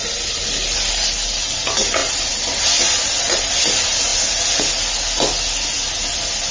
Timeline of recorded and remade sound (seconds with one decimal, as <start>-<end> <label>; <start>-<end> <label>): 0.0-6.5 recorded